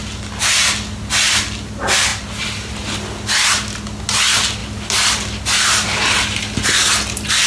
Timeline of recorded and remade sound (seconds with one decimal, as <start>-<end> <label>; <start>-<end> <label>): 0.0-7.5 recorded